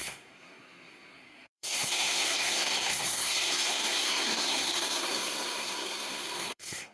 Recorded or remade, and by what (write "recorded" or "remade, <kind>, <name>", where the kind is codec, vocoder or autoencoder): remade, codec, SNAC